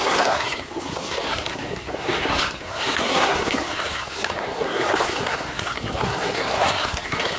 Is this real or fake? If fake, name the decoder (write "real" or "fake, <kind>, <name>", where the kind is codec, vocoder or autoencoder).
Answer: fake, codec, SNAC